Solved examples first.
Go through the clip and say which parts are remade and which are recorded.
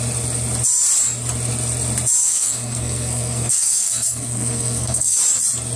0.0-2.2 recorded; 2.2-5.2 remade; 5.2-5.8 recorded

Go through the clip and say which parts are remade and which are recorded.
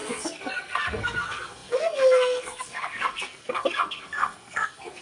0.0-5.0 remade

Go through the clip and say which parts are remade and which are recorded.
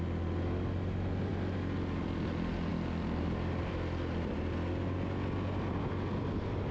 0.0-6.7 recorded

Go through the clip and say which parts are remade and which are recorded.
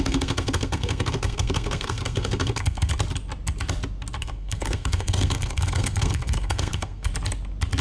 0.0-2.9 remade; 2.9-4.2 recorded; 4.2-7.1 remade; 7.1-7.8 recorded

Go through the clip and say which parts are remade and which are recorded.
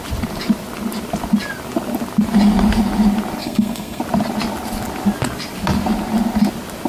0.0-3.4 recorded; 3.4-4.0 remade; 4.0-6.9 recorded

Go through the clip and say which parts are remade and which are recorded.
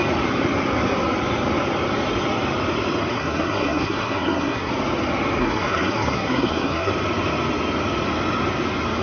0.0-3.1 recorded; 3.1-4.7 remade; 4.7-5.4 recorded; 5.4-6.9 remade; 6.9-9.0 recorded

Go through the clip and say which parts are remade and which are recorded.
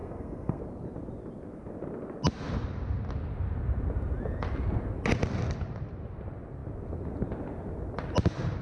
0.0-0.6 remade; 0.6-8.6 recorded